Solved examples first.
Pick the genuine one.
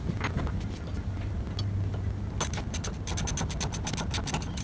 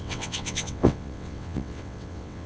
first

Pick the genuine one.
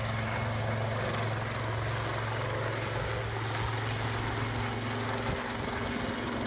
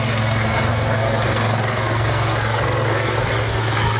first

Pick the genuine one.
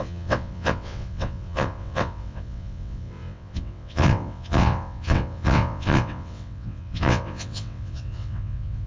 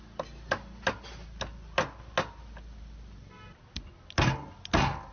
second